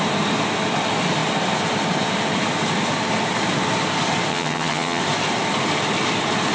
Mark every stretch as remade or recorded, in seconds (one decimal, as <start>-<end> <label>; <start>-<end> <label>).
0.0-4.3 recorded; 4.3-5.0 remade; 5.0-6.5 recorded

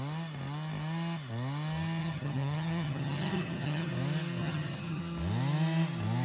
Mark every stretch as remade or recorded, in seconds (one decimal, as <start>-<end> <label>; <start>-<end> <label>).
0.0-2.0 recorded; 2.0-3.9 remade; 3.9-4.4 recorded; 4.4-5.0 remade; 5.0-6.2 recorded

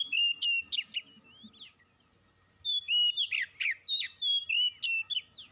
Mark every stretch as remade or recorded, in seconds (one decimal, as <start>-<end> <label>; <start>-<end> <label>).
0.0-5.5 recorded

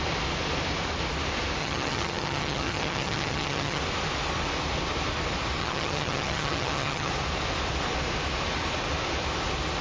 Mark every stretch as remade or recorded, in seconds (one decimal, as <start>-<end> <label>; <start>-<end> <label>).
0.0-1.6 recorded; 1.6-3.8 remade; 3.8-5.6 recorded; 5.6-7.1 remade; 7.1-9.8 recorded

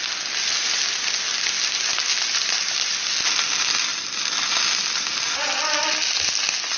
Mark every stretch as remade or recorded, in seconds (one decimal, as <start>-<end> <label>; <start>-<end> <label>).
0.0-6.8 recorded

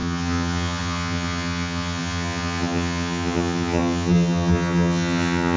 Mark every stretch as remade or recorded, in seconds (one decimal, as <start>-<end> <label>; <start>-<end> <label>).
0.0-5.6 remade